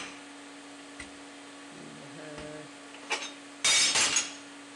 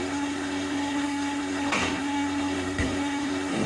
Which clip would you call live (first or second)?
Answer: first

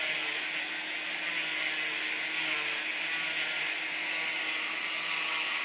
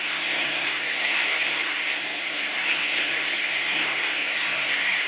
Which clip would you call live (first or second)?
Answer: first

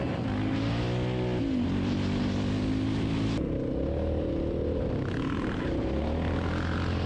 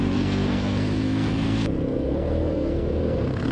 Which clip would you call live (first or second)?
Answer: first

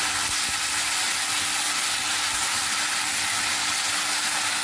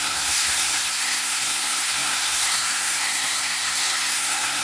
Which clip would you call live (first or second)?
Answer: first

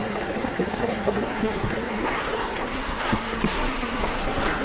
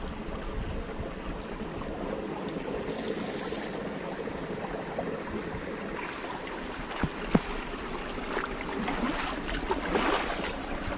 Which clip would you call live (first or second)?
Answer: second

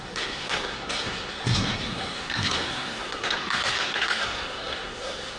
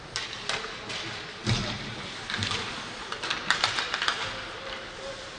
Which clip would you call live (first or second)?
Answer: second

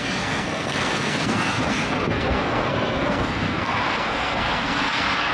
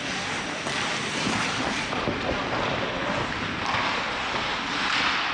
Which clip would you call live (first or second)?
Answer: second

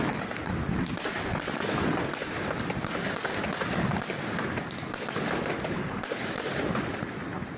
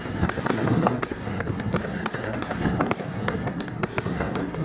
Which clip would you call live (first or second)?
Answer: first